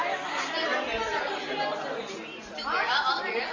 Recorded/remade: recorded